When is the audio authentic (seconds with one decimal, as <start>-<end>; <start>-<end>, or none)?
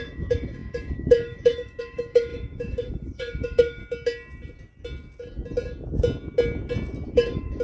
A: 3.8-7.1